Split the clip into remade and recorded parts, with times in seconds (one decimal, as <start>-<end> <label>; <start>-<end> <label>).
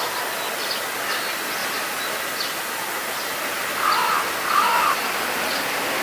0.0-6.0 recorded